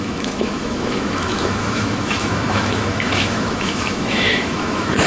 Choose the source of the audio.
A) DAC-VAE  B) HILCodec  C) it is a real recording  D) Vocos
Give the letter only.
A